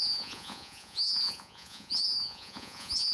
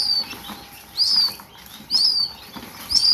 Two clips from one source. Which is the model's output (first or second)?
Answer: first